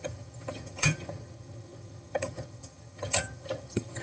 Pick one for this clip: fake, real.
fake